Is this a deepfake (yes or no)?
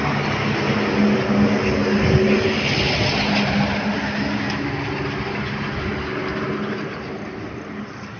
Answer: no